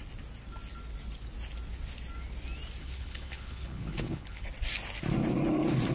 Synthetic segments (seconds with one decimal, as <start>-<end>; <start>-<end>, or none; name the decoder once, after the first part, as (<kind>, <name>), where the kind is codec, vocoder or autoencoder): 2.8-4.5 (codec, HILCodec)